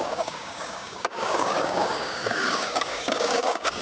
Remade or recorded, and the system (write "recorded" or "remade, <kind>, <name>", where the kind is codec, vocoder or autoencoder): remade, codec, DAC